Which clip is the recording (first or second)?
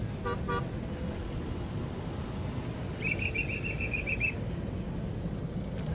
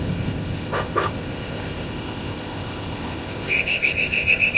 first